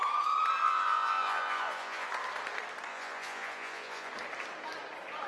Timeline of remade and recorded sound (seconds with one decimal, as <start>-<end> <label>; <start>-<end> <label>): 0.0-0.6 recorded; 0.6-2.1 remade; 2.1-2.9 recorded; 2.9-4.1 remade; 4.1-5.3 recorded